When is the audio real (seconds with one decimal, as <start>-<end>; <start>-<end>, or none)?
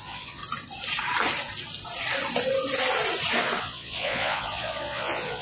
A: 0.4-3.6